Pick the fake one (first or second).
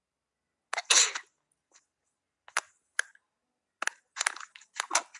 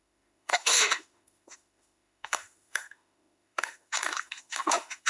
second